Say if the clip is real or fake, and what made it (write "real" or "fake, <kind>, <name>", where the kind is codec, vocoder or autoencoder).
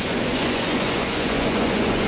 fake, vocoder, Vocos